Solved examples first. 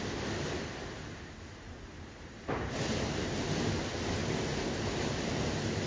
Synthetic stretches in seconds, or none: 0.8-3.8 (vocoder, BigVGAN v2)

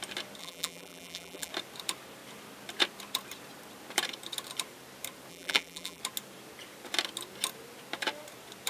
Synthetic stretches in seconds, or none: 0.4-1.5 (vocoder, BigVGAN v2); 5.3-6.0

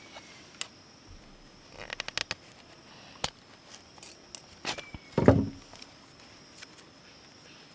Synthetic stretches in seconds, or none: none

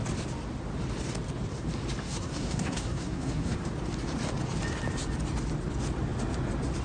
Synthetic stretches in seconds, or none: 2.0-3.6 (codec, SNAC)

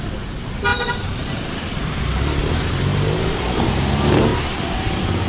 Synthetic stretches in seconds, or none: 0.7-2.0 (vocoder, BigVGAN v2); 2.9-3.7; 4.3-5.3

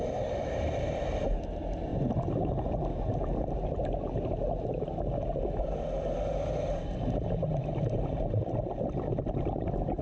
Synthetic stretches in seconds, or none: 0.0-1.9 (vocoder, BigVGAN v2); 6.9-10.0

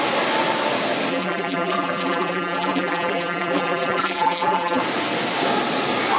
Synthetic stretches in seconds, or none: 1.1-4.8 (vocoder, BigVGAN v2)